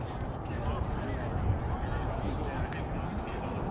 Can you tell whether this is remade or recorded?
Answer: recorded